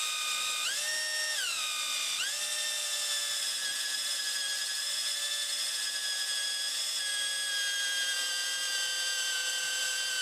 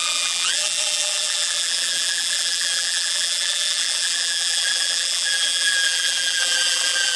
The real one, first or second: first